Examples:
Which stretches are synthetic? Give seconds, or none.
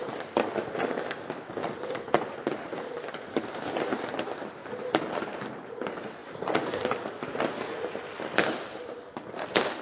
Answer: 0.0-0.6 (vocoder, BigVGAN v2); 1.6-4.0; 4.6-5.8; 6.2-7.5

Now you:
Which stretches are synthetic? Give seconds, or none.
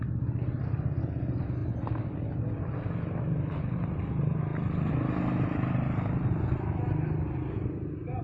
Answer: none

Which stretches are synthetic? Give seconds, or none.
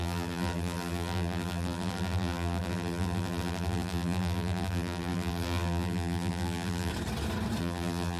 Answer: 0.0-6.9 (vocoder, BigVGAN v2); 7.6-8.2